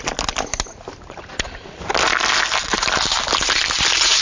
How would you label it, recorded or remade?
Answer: recorded